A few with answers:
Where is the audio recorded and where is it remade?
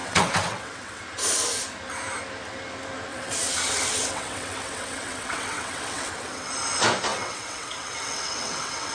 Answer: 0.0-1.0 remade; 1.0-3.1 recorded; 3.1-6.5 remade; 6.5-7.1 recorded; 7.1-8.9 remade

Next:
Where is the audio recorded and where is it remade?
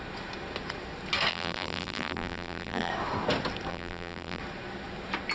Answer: 0.0-1.3 recorded; 1.3-2.9 remade; 2.9-3.7 recorded; 3.7-4.4 remade; 4.4-5.3 recorded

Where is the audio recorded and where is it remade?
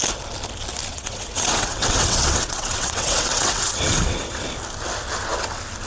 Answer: 0.0-0.9 recorded; 0.9-4.4 remade; 4.4-5.9 recorded